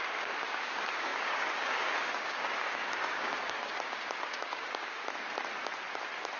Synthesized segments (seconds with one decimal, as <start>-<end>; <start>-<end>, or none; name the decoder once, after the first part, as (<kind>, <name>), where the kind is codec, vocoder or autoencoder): 0.0-5.0 (codec, DAC)